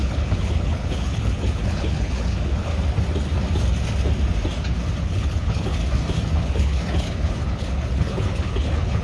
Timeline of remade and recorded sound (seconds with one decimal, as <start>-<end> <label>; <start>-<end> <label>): 0.0-2.7 remade; 2.7-5.0 recorded; 5.0-5.8 remade; 5.8-6.4 recorded; 6.4-9.0 remade